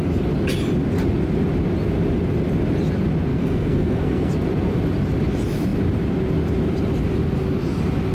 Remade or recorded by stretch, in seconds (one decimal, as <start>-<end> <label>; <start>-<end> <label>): 0.0-3.3 recorded; 3.3-4.3 remade; 4.3-8.1 recorded